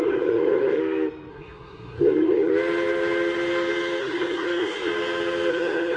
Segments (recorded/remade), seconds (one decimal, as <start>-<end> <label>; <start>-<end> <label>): 0.0-0.8 remade; 0.8-1.3 recorded; 1.3-2.5 remade; 2.5-4.0 recorded; 4.0-4.9 remade; 4.9-5.5 recorded; 5.5-6.0 remade